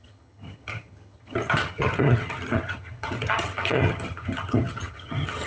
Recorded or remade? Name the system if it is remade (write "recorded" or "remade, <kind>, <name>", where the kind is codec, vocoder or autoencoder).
remade, vocoder, HiFi-GAN